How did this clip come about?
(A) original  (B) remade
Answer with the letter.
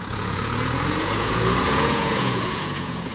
B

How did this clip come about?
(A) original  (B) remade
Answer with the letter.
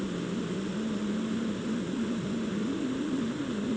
A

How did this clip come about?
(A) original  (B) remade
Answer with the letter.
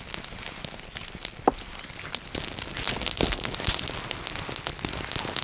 A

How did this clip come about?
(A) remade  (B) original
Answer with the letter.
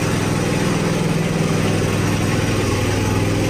B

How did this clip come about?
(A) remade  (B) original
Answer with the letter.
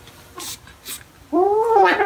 A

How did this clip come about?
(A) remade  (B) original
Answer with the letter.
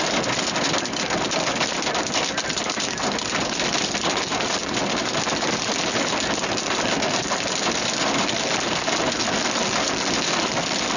B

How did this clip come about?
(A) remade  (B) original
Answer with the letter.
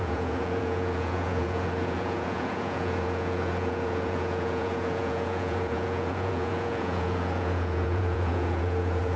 A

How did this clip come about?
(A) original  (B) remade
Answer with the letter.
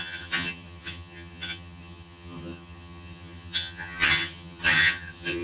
B